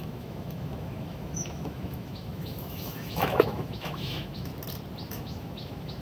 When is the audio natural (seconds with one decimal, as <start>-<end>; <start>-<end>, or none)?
4.5-5.1